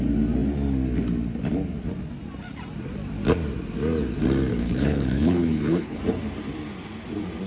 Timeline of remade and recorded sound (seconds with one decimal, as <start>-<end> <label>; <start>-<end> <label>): 0.0-4.5 recorded; 4.5-6.0 remade; 6.0-7.5 recorded